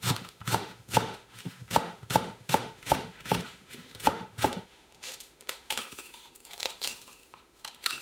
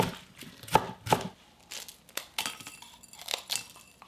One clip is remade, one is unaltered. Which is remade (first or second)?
first